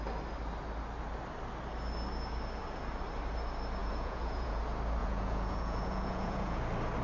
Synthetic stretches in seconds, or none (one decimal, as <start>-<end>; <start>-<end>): 3.8-4.6; 5.0-6.6